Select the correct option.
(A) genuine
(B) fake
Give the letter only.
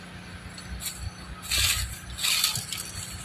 A